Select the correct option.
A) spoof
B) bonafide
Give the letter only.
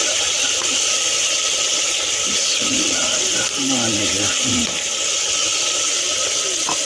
B